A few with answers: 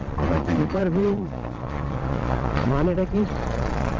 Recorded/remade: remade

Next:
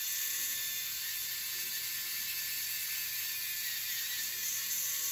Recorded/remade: remade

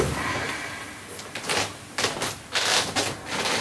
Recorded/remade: recorded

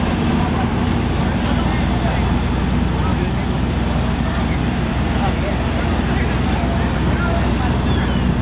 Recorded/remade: recorded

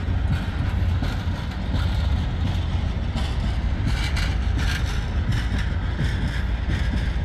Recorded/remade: recorded